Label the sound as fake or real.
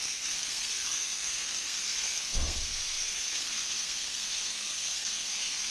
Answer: fake